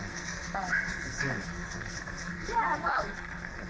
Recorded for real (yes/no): no